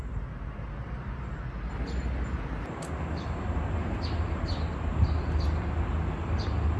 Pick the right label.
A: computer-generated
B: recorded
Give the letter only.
B